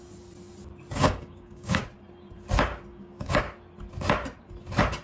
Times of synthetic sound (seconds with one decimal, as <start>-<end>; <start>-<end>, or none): 1.0-1.8; 2.9-3.4